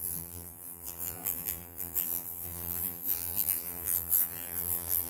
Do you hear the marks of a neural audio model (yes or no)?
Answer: yes